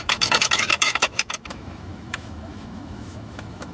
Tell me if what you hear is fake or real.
fake